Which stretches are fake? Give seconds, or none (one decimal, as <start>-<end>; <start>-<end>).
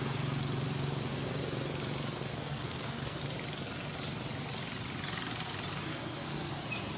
2.3-3.2; 5.9-6.5